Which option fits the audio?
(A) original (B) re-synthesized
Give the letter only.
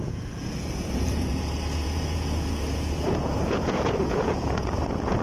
B